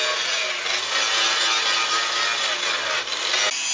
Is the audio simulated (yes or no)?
no